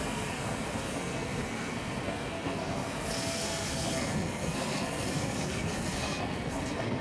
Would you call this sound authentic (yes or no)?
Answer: no